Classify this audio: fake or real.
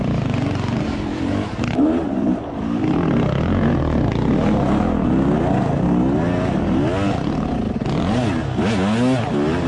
real